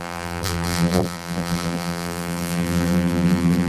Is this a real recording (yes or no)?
no